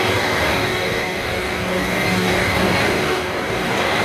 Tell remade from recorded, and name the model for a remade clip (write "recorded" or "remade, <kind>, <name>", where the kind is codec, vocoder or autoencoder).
remade, codec, DAC